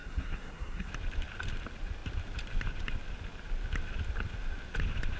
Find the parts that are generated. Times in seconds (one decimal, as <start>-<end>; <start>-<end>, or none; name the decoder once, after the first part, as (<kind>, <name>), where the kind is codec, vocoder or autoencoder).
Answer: 0.0-0.9 (codec, SNAC)